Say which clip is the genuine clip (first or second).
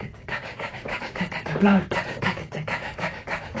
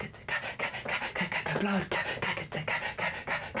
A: second